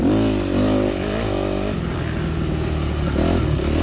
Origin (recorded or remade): recorded